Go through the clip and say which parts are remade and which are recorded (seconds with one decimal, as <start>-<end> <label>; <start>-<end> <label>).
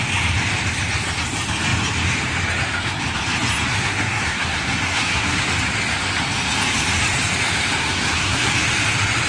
0.0-3.7 recorded; 3.7-5.4 remade; 5.4-7.8 recorded; 7.8-8.5 remade; 8.5-9.3 recorded